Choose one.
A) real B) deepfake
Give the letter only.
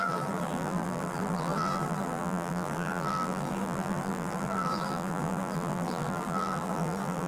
B